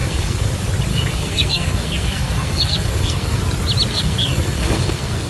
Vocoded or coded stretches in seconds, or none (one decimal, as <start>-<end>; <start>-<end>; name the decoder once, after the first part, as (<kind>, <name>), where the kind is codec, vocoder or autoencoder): 0.0-0.5 (codec, SNAC); 0.9-3.4; 3.9-5.3